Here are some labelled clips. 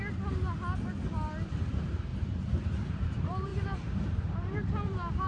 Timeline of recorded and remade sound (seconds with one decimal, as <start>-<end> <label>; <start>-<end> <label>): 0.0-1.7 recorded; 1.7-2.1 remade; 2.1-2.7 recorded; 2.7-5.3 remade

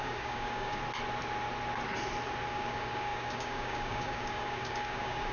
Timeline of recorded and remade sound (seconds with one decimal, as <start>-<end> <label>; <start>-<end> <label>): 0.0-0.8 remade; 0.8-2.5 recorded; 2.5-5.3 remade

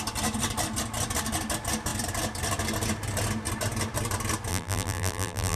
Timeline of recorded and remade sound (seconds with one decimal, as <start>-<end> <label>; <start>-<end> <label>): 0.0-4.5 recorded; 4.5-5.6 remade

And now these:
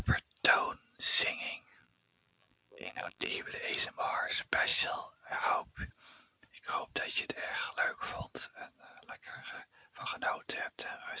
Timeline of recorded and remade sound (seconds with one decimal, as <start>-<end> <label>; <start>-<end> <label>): 0.0-1.8 recorded; 1.8-3.3 remade; 3.3-11.2 recorded

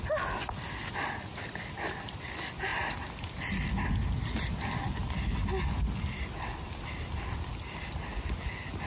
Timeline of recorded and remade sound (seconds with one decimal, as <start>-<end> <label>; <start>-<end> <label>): 0.0-8.9 recorded

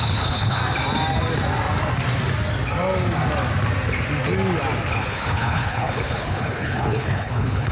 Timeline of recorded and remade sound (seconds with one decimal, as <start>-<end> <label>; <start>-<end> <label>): 0.0-0.6 remade; 0.6-4.9 recorded; 4.9-7.7 remade

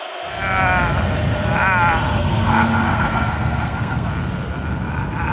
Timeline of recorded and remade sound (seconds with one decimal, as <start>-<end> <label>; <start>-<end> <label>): 0.0-2.1 recorded; 2.1-4.1 remade; 4.1-5.3 recorded